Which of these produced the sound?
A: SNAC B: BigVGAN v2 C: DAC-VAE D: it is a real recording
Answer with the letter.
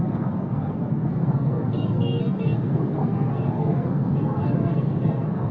A